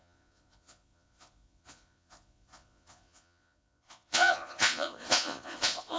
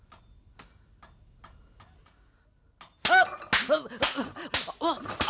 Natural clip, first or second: second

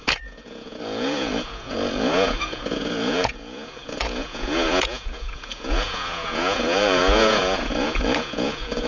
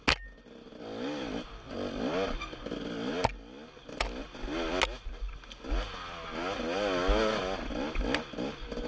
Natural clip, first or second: second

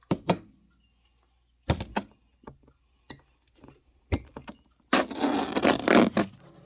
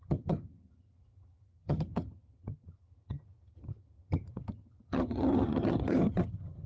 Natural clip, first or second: first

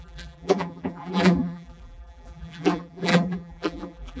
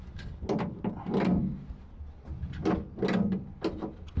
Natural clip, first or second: second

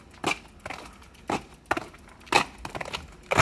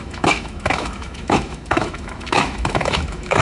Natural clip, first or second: first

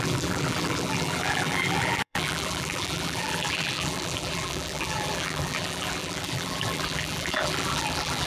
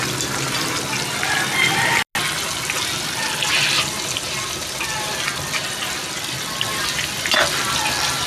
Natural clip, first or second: second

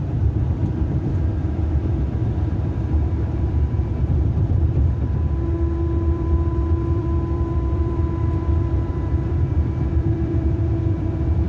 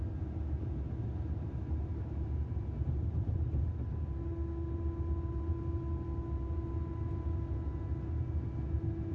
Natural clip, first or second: second